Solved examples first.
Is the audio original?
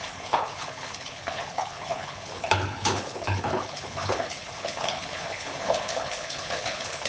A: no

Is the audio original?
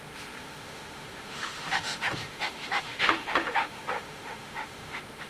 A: no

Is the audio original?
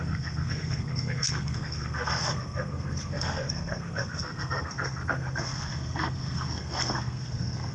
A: no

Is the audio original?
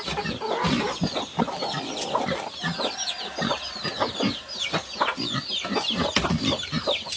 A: yes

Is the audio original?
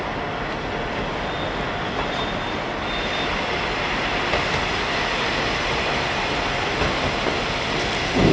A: yes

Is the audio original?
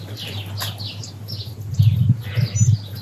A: yes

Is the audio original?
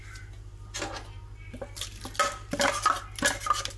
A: yes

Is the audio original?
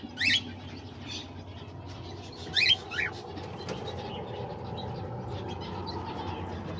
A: yes